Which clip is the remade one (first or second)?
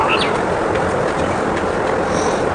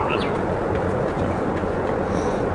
second